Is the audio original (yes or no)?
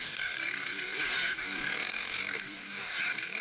no